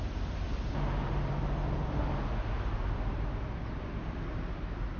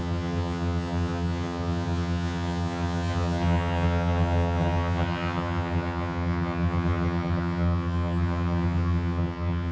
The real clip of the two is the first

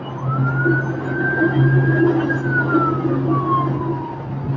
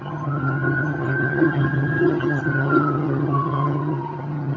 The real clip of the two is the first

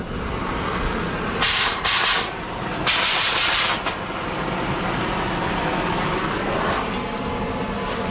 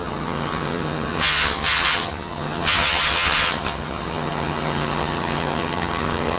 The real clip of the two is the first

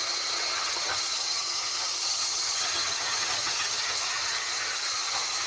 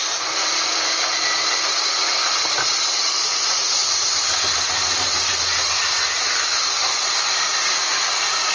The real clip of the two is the second